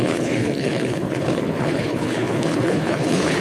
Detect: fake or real fake